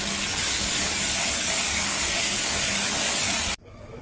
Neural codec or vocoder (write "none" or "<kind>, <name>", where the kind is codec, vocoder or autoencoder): codec, DAC